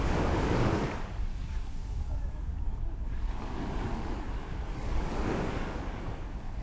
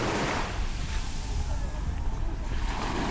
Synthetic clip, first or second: first